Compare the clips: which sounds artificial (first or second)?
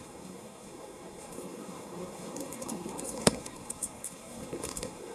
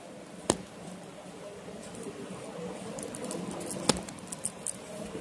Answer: first